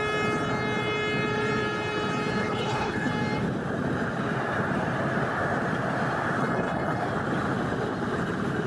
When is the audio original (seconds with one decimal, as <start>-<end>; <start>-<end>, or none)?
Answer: 0.0-2.4; 3.1-6.4; 7.0-8.7